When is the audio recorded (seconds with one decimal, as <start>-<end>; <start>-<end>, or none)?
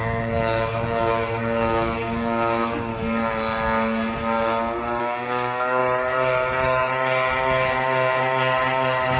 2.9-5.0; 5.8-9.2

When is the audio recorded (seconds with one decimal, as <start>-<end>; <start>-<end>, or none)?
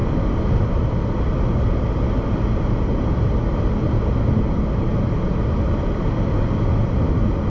0.0-7.5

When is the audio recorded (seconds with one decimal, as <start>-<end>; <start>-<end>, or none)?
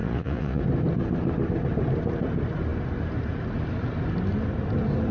0.6-5.1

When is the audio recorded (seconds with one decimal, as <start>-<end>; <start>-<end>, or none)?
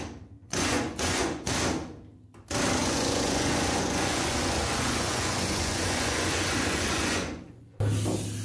0.0-0.4; 1.5-2.8; 7.8-8.4